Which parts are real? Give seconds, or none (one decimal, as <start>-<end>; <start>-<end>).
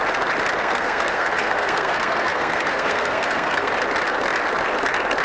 0.0-0.6; 3.7-5.2